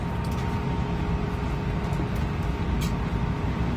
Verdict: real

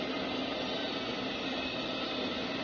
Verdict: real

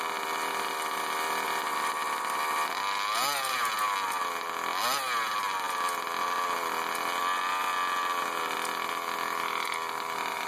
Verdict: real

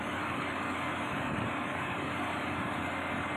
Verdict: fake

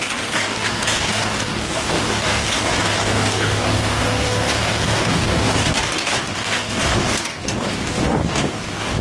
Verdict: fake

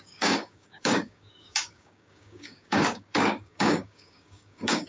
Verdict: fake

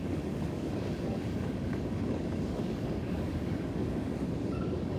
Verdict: fake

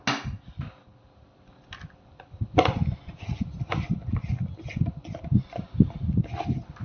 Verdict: real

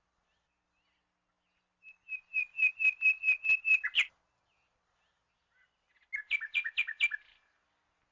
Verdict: real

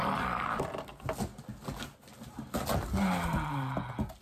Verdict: real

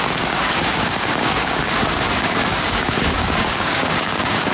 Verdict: fake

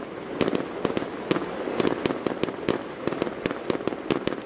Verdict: real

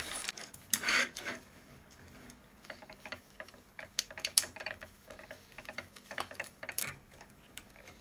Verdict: fake